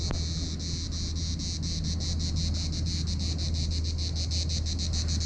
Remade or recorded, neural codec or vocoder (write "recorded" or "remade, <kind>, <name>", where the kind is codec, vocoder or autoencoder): recorded